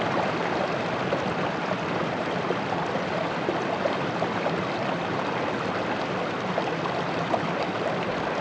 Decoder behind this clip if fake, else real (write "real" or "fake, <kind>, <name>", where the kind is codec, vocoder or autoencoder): fake, vocoder, BigVGAN v2